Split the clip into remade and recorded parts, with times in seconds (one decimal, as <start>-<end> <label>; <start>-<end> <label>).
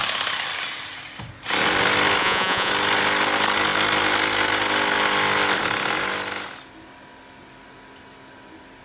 0.0-2.2 recorded; 2.2-2.7 remade; 2.7-8.8 recorded